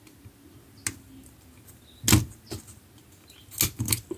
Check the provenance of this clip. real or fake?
real